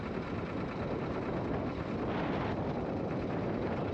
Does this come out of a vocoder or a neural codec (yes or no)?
no